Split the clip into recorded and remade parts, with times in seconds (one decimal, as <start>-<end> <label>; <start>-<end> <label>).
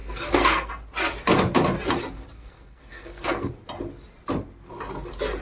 0.0-0.7 remade; 0.7-2.3 recorded; 2.3-3.5 remade; 3.5-5.4 recorded